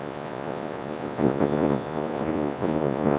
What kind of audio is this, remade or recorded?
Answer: remade